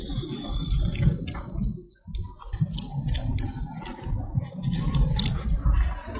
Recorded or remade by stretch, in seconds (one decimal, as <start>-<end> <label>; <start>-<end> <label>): 0.0-6.2 recorded